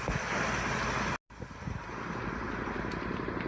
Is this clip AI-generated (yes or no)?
no